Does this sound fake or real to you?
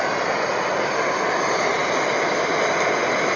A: real